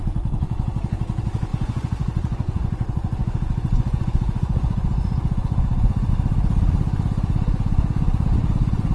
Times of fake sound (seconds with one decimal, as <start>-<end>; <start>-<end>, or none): 1.5-6.1